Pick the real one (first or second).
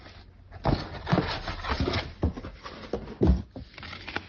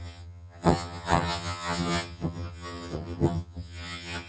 first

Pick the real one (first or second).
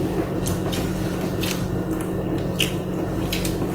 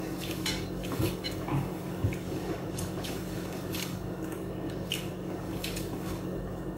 first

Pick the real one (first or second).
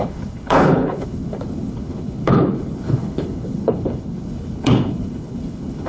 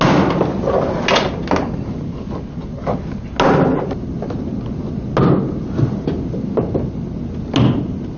second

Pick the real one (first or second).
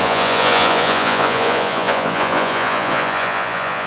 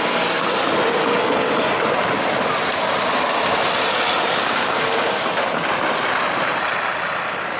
second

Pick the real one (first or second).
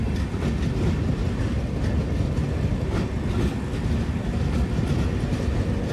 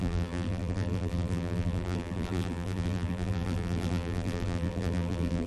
first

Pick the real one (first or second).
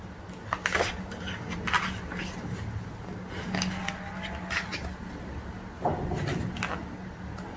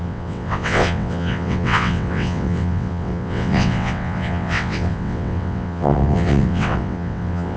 first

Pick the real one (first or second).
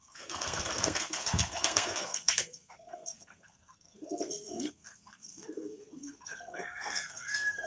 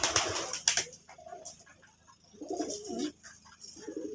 second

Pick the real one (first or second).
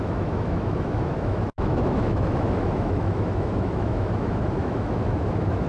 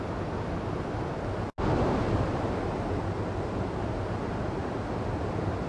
second